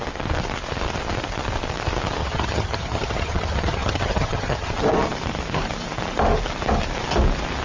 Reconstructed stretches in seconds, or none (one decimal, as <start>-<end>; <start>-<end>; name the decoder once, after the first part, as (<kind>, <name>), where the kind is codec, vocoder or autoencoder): 2.2-4.7 (vocoder, HiFi-GAN)